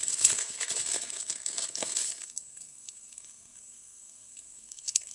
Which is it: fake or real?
fake